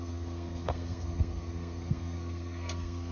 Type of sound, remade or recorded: remade